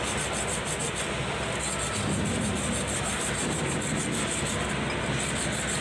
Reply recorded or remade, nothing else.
recorded